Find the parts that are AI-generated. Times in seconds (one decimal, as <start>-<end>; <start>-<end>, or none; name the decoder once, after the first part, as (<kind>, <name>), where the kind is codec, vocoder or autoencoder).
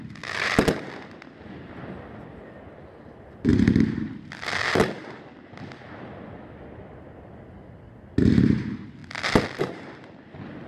none